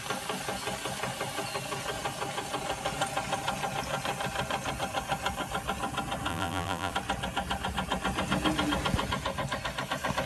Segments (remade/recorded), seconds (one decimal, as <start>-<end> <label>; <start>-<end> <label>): 0.0-6.3 recorded; 6.3-6.9 remade; 6.9-10.3 recorded